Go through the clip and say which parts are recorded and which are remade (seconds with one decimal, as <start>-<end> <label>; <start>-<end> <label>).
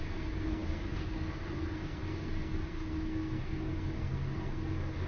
0.0-5.1 remade